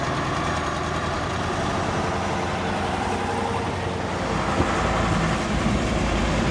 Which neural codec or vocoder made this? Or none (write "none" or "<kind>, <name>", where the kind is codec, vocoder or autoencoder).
none